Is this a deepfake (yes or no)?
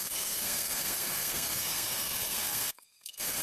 yes